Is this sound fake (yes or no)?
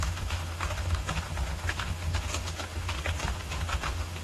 yes